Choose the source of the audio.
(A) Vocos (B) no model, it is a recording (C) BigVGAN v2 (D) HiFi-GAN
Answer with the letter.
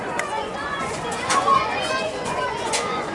A